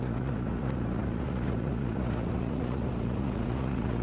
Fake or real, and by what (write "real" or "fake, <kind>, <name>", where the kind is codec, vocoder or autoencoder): fake, vocoder, Vocos